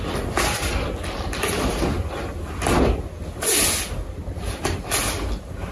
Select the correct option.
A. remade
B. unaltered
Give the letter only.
B